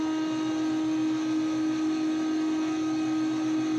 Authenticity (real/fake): real